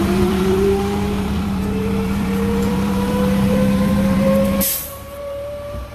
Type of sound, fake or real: fake